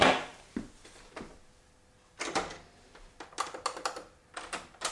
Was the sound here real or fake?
real